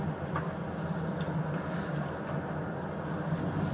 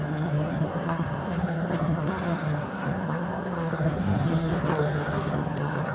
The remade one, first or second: second